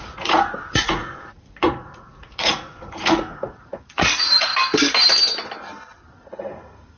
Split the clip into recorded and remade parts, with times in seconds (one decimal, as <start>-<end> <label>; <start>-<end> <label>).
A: 0.0-4.5 remade; 4.5-6.1 recorded; 6.1-7.0 remade